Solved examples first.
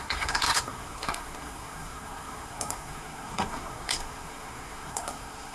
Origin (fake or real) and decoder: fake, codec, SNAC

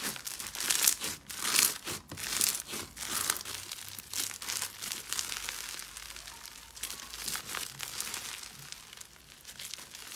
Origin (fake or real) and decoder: real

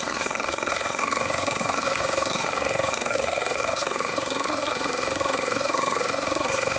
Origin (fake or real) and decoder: fake, codec, SNAC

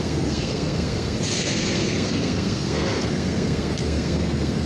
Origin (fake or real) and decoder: fake, codec, SNAC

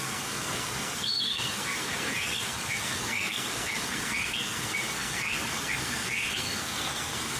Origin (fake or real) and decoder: fake, codec, SNAC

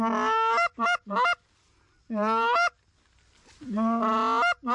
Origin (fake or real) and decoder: real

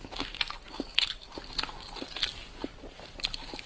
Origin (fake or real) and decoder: real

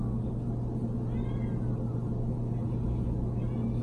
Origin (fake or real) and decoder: real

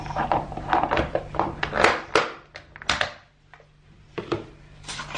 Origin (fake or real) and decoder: real